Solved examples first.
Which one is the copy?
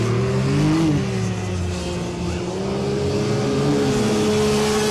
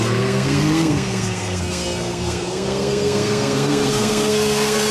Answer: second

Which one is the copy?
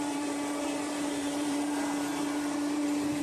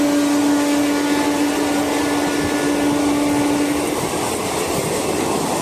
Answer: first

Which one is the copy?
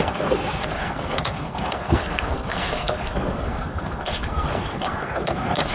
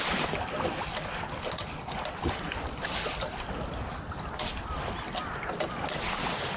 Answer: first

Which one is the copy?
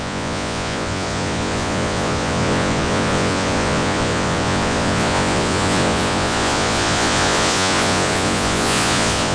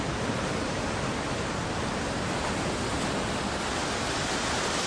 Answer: first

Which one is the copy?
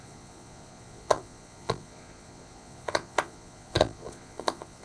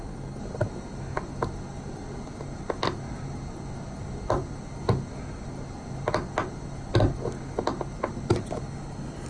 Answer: first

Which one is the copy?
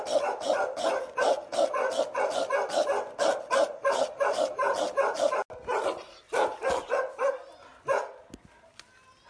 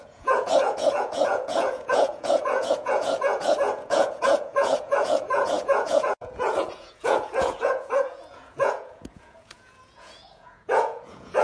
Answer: second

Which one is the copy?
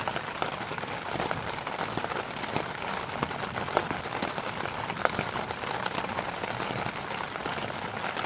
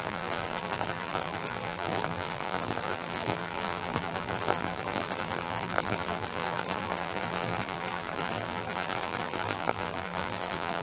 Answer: second